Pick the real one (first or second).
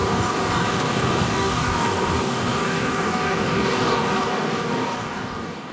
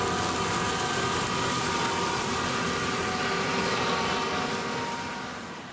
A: second